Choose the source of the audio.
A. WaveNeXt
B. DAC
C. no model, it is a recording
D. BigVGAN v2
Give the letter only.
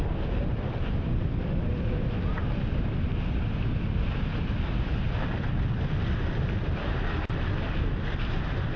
C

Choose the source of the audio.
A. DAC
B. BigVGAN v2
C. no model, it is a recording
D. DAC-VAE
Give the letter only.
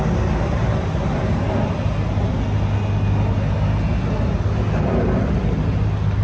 C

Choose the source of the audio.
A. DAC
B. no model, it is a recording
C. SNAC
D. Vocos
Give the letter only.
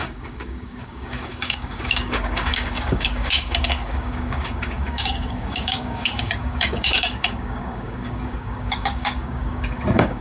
A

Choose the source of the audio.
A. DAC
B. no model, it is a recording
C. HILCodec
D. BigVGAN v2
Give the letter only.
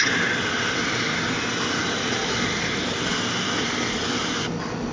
B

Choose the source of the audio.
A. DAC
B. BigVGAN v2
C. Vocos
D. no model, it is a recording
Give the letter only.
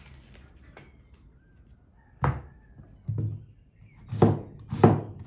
D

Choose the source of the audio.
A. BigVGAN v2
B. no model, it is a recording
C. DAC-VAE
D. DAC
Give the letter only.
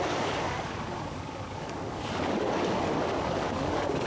D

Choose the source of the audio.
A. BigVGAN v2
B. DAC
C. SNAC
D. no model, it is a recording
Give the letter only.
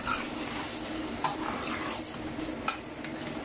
D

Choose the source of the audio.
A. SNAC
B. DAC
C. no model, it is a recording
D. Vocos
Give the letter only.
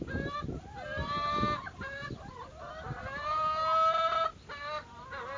C